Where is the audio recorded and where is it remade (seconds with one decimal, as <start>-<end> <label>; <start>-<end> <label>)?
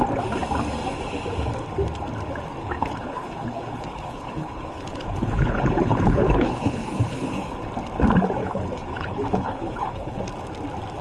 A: 0.0-2.6 recorded; 2.6-7.5 remade; 7.5-8.4 recorded; 8.4-10.2 remade; 10.2-11.0 recorded